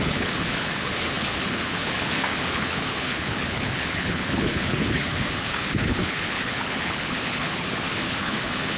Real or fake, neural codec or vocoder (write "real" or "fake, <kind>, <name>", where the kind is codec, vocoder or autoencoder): fake, codec, HILCodec